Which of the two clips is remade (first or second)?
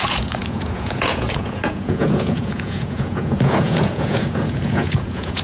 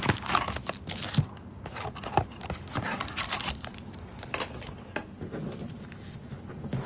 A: first